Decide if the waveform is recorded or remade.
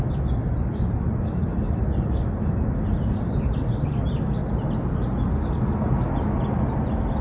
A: recorded